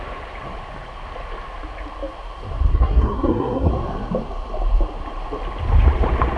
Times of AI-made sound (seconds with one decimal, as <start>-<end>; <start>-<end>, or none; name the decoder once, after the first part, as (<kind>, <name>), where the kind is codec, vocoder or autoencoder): 2.7-3.7 (codec, SNAC)